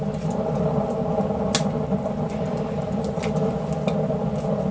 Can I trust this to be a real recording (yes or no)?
yes